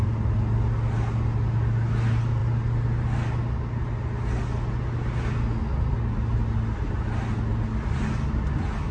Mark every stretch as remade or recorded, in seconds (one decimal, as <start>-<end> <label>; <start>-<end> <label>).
0.0-8.9 recorded